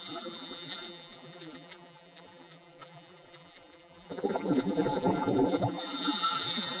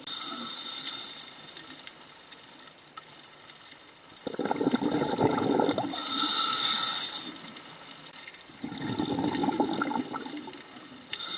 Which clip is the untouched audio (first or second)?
second